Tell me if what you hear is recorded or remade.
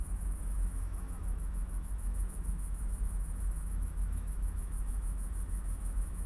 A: remade